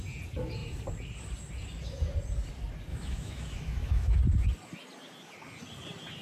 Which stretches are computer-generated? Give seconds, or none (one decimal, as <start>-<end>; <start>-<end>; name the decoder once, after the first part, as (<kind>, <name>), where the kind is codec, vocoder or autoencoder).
2.9-4.2 (autoencoder, DAC-VAE)